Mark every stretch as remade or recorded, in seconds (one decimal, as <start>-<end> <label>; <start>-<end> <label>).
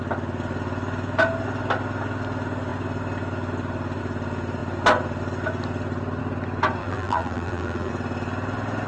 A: 0.0-6.8 recorded; 6.8-7.9 remade; 7.9-8.9 recorded